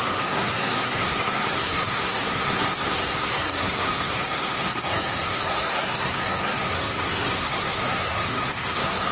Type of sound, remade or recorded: remade